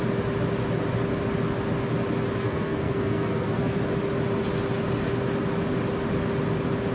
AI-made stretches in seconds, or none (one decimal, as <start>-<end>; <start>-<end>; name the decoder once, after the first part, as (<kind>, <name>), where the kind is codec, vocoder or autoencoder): 2.4-3.8 (codec, SNAC)